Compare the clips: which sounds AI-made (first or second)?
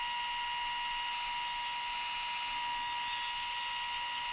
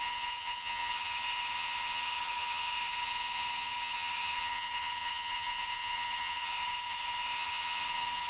second